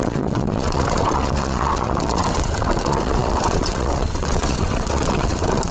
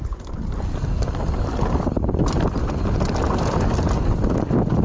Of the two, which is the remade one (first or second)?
first